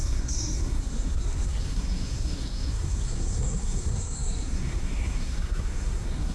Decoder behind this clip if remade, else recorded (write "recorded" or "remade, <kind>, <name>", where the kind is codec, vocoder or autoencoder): remade, codec, SNAC